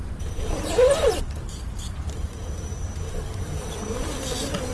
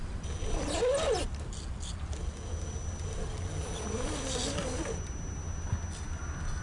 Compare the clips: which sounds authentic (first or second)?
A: second